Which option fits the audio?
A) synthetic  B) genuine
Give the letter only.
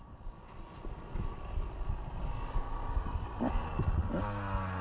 B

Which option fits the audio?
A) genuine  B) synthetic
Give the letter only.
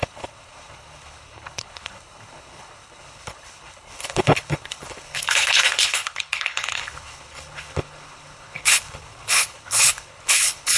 B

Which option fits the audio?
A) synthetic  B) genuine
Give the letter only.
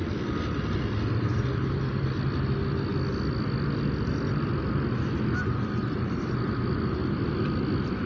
B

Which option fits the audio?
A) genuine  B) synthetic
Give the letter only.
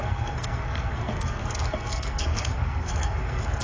B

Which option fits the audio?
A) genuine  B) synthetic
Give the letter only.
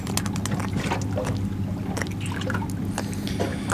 A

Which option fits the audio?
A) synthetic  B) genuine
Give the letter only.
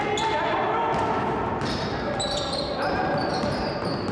B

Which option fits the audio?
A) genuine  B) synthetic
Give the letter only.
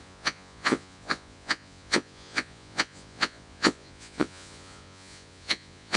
B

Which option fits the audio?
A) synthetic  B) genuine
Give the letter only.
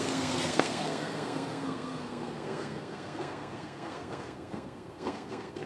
A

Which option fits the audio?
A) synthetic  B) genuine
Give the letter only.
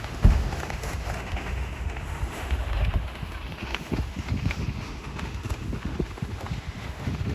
A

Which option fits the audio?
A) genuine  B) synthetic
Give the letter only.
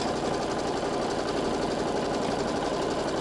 A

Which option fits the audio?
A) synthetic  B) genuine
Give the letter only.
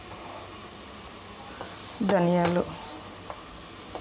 B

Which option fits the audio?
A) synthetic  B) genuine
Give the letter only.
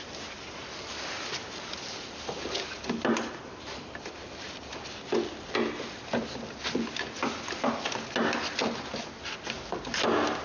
B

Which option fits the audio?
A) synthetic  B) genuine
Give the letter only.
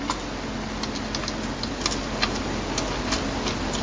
B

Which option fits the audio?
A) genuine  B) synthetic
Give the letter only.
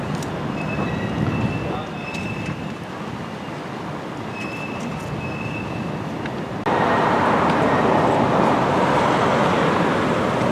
A